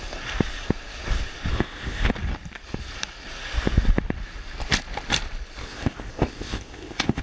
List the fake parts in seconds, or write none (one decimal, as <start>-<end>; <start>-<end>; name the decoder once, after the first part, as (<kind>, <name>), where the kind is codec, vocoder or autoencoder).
1.5-2.1 (codec, ZipCodec); 5.6-7.2